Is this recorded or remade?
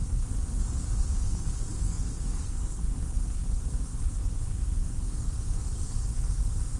remade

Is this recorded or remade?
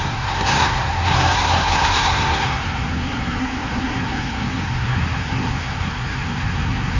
remade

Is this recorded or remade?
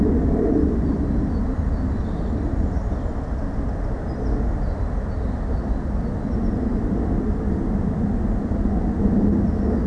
recorded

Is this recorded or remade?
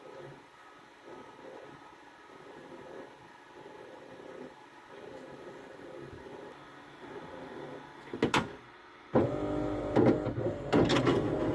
recorded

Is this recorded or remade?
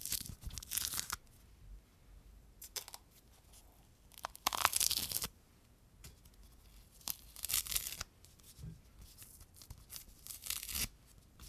recorded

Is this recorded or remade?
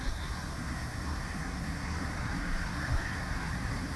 remade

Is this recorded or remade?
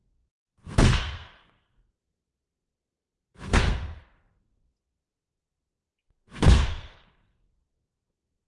remade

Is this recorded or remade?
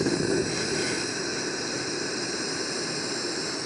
recorded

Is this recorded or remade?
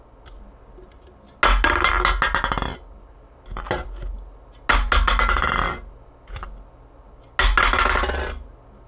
recorded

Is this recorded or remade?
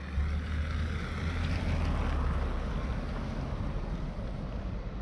recorded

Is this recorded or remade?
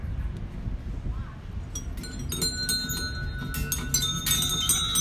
recorded